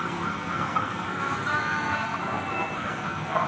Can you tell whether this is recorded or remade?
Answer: remade